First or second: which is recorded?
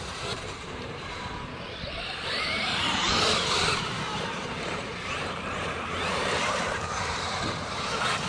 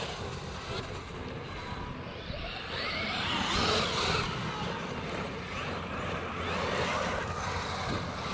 second